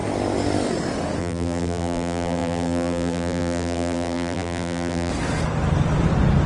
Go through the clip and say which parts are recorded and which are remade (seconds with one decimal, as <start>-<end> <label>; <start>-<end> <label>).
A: 0.0-1.2 recorded; 1.2-5.1 remade; 5.1-6.5 recorded